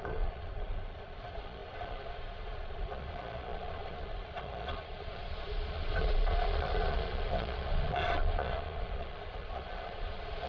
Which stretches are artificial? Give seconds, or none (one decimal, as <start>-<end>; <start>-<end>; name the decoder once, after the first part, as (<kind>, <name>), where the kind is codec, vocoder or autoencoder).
0.0-10.5 (vocoder, Vocos)